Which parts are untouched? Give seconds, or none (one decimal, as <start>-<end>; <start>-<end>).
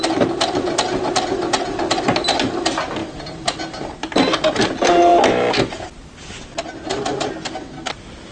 0.0-8.3